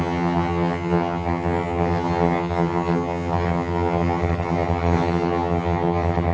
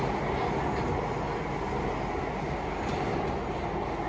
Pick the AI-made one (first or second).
first